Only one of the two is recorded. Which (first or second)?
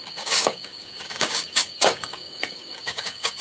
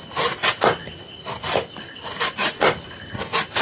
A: second